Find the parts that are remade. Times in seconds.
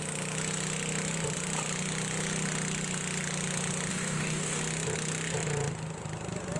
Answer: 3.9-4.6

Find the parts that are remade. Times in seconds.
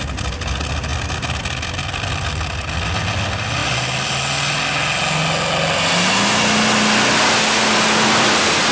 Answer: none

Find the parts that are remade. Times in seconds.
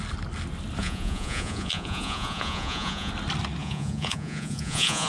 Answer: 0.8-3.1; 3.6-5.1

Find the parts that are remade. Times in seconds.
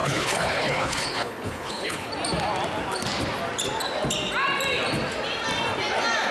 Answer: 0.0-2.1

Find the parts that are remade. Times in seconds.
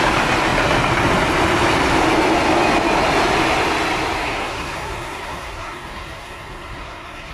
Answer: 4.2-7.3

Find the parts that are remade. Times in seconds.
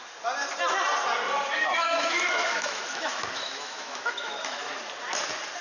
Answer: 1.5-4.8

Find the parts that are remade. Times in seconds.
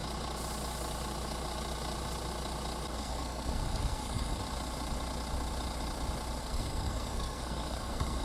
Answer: 2.9-4.4; 6.4-8.2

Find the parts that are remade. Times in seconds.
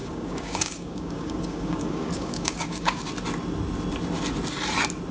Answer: 0.0-3.1